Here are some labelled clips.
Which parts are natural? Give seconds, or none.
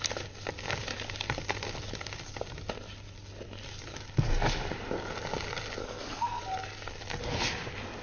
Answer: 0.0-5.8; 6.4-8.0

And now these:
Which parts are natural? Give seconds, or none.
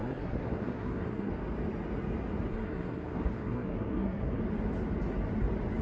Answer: 1.3-2.5; 4.4-5.8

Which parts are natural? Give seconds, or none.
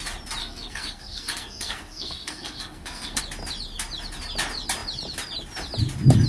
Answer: 0.0-0.4; 3.2-6.3